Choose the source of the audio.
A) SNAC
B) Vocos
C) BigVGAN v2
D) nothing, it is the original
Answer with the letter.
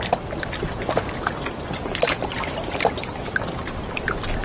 D